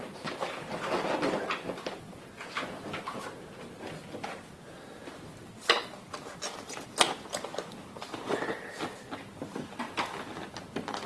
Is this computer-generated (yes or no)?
no